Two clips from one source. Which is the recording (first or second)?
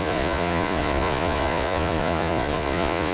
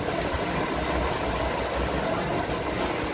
second